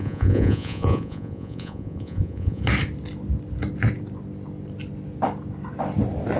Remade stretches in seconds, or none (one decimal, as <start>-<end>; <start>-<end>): 0.0-2.6